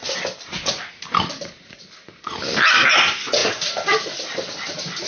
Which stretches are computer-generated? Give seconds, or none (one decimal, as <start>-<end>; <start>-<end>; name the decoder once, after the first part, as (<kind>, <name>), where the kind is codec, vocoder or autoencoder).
none